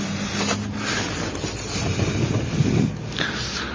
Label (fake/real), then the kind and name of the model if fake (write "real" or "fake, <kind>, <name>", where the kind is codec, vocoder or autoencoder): real